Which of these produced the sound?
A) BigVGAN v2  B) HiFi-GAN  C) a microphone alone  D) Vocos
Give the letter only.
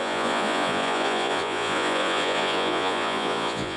D